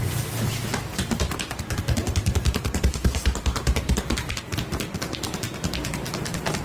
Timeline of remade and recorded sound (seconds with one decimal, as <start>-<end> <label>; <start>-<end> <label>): 0.0-6.6 recorded